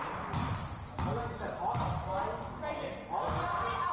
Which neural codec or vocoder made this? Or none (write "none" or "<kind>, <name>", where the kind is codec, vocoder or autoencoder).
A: none